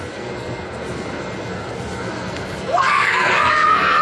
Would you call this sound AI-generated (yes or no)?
yes